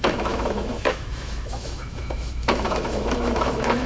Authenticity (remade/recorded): remade